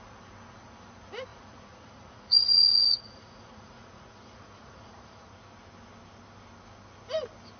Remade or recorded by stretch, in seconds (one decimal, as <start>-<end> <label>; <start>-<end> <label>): 0.0-1.3 recorded; 1.3-5.3 remade; 5.3-7.6 recorded